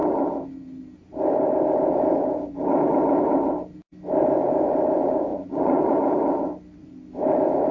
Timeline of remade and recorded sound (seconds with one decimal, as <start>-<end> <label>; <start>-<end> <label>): 0.0-5.3 recorded; 5.3-5.9 remade; 5.9-7.7 recorded